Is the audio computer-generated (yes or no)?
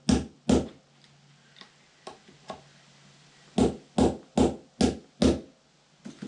no